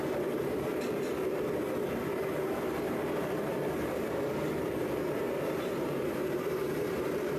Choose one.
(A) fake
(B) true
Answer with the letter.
A